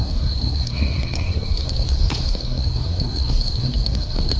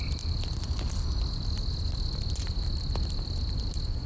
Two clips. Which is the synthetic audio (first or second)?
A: first